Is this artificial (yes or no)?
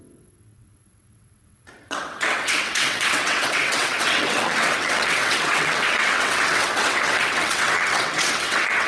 yes